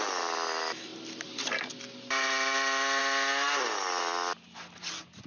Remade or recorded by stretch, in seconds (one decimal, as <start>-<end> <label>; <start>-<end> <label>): 0.0-5.3 recorded